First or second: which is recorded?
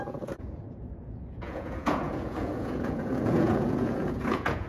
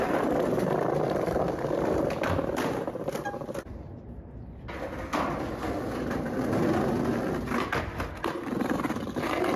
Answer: second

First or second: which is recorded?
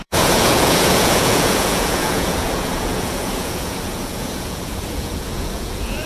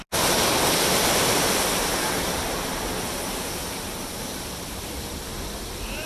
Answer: second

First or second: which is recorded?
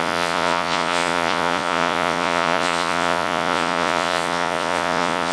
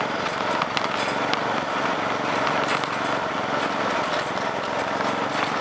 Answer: second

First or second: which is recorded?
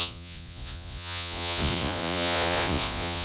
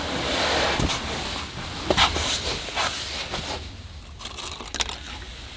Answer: second